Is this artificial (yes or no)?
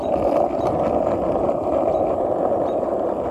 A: no